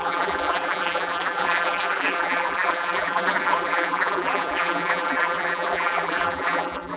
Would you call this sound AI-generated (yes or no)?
yes